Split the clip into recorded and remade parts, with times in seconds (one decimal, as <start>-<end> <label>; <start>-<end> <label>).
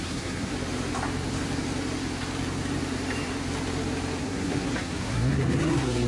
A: 0.0-0.5 remade; 0.5-4.2 recorded; 4.2-6.1 remade